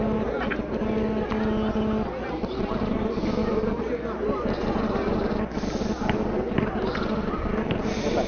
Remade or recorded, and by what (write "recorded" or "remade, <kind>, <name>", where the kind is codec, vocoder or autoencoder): recorded